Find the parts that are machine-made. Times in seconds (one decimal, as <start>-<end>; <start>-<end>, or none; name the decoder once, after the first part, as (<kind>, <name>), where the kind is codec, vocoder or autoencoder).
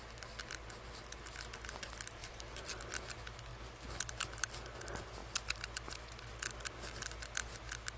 2.2-2.8 (vocoder, BigVGAN v2)